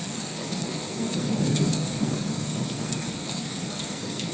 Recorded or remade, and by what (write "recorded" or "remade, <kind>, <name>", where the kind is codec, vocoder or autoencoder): remade, codec, SNAC